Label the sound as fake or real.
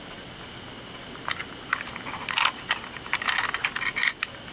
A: real